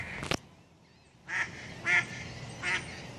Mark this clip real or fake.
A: real